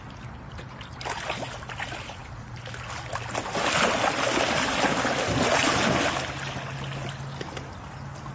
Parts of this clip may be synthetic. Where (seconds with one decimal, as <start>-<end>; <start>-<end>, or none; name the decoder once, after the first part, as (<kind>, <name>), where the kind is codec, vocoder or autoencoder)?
none